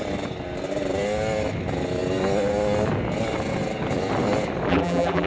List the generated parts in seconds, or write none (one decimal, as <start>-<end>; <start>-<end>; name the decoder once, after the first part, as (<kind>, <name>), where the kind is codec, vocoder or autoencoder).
4.7-5.3 (vocoder, BigVGAN v2)